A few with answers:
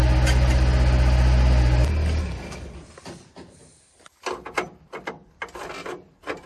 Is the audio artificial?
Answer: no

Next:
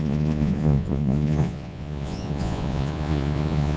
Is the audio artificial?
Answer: yes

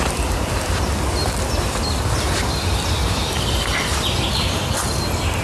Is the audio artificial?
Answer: no